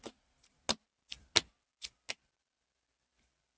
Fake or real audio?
real